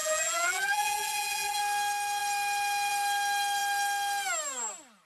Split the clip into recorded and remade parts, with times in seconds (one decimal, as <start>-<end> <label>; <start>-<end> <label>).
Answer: 0.0-1.6 remade; 1.6-5.1 recorded